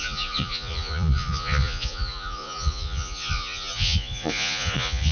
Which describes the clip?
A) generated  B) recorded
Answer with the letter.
A